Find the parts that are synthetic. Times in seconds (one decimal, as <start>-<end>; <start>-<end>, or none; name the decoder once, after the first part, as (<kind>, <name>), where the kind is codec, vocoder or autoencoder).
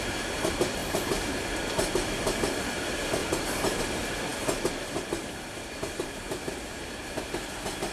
0.8-1.6 (vocoder, BigVGAN v2); 3.2-3.8; 5.2-7.0